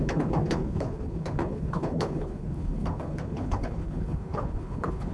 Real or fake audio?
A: fake